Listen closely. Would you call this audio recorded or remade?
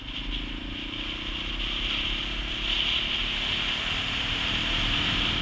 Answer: recorded